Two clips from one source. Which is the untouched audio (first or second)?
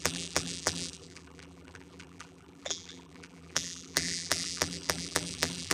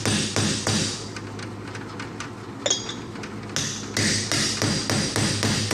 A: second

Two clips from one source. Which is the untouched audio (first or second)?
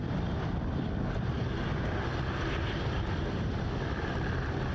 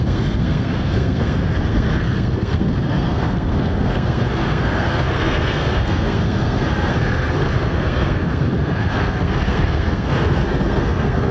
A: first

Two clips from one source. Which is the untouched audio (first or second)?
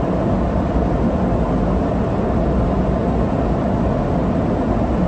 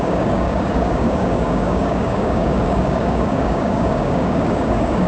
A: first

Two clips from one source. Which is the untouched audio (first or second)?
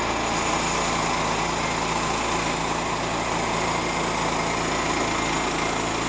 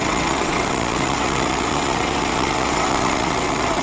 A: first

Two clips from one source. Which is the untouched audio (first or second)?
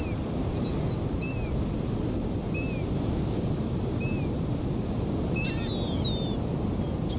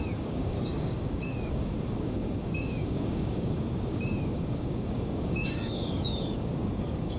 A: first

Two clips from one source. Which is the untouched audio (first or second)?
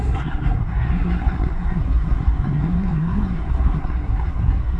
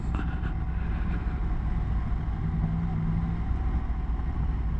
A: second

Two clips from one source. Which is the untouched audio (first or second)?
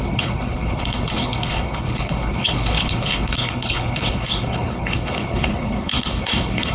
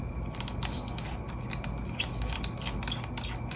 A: second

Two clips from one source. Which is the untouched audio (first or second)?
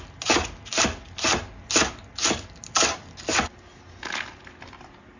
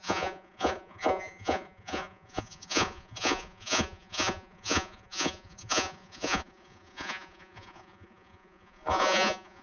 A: first